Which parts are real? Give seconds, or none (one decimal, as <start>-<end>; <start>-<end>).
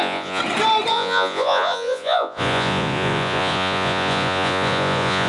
0.4-0.9